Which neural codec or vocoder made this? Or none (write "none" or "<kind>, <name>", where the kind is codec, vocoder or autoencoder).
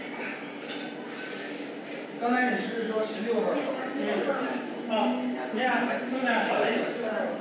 none